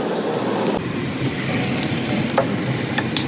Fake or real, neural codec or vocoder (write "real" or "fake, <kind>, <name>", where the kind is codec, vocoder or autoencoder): real